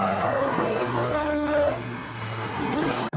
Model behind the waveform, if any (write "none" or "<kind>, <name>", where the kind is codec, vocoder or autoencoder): codec, SNAC